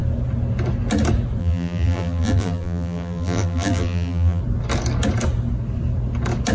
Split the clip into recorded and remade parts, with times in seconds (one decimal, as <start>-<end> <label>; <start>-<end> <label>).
0.0-1.4 recorded; 1.4-4.4 remade; 4.4-6.5 recorded